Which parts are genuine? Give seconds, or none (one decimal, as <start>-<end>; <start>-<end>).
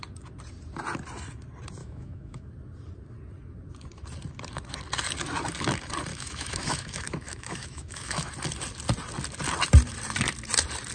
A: 0.0-1.8; 2.5-6.1; 8.3-10.9